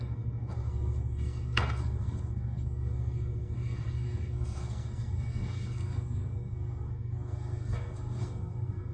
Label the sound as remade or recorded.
remade